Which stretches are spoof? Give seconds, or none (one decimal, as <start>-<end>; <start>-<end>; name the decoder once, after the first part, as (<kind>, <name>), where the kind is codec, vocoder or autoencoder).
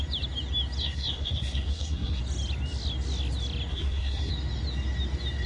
0.8-2.2 (codec, SNAC); 3.7-4.3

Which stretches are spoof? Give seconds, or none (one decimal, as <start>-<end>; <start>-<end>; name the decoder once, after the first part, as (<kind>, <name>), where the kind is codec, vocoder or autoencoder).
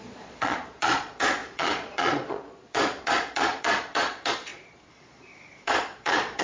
0.0-6.4 (vocoder, Vocos)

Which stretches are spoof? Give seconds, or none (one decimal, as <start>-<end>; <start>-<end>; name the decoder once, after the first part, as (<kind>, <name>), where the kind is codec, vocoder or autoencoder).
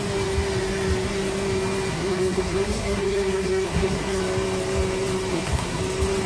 1.9-4.2 (codec, SNAC); 5.3-5.8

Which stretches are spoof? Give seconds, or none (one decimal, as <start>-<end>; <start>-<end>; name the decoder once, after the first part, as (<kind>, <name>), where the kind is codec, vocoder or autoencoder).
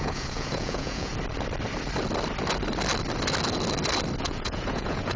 0.0-1.1 (vocoder, Vocos); 4.2-5.2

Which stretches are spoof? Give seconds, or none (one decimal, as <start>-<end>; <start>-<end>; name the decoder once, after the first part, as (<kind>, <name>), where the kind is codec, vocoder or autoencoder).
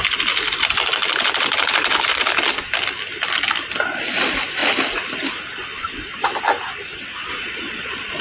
7.3-8.2 (vocoder, Vocos)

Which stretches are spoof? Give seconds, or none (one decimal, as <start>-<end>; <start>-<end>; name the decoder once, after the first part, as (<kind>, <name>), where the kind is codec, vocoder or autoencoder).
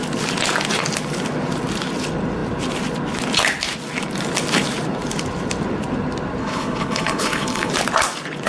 6.4-7.7 (codec, HILCodec)